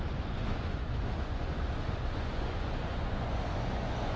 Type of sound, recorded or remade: remade